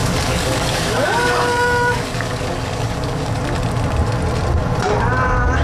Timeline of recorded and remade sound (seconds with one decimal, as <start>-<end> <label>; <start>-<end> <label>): 0.0-3.4 remade; 3.4-5.6 recorded